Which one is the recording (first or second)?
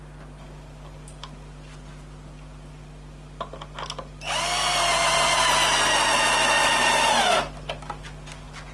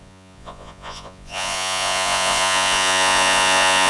first